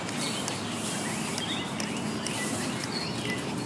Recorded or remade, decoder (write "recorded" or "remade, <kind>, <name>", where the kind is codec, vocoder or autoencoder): recorded